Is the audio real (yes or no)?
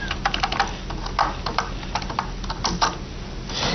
yes